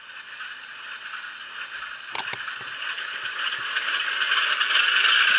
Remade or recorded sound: recorded